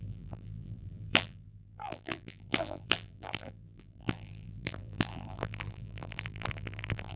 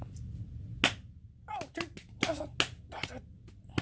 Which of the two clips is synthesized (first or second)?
first